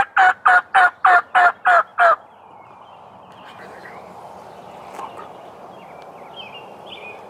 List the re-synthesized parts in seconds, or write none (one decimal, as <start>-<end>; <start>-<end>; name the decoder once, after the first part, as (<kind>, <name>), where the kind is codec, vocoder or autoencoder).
none